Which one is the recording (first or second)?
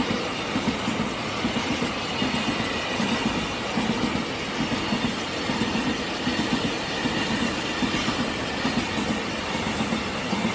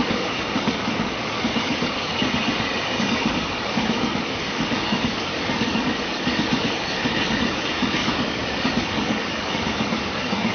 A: first